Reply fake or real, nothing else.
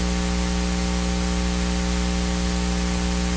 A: real